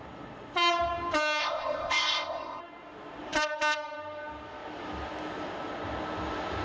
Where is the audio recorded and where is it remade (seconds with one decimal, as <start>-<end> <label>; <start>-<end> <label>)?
0.0-1.4 recorded; 1.4-2.6 remade; 2.6-6.6 recorded